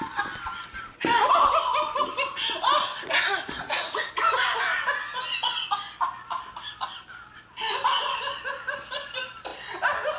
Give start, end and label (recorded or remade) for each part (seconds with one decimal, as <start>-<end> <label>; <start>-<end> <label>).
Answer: 0.0-2.9 recorded; 2.9-4.1 remade; 4.1-10.2 recorded